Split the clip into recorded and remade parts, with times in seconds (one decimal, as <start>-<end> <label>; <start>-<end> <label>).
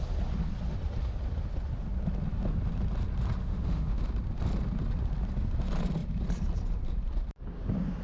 0.0-3.4 recorded; 3.4-4.0 remade; 4.0-8.0 recorded